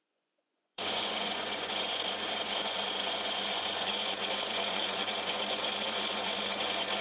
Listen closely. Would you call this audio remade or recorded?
remade